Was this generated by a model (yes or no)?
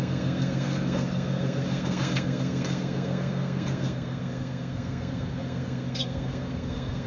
yes